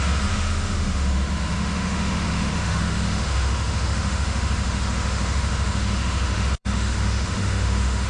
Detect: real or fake fake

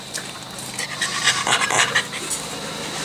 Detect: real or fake real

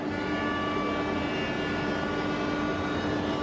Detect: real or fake real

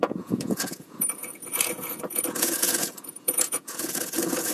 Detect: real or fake fake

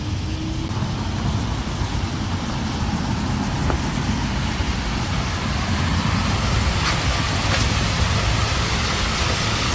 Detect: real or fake real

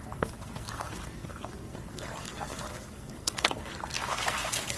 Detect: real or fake fake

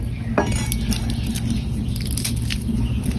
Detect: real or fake real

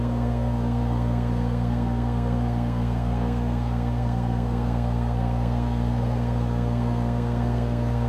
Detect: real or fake fake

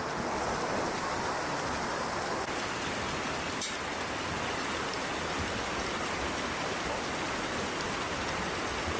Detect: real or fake real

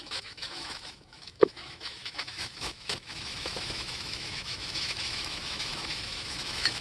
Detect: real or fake fake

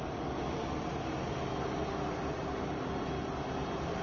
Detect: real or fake real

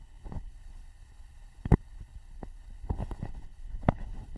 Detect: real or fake fake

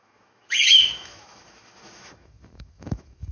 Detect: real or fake fake